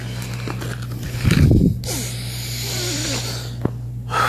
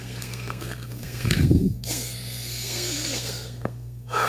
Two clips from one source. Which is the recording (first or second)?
first